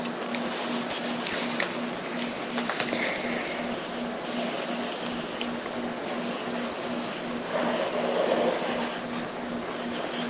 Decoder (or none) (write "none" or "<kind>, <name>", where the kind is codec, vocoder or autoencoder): none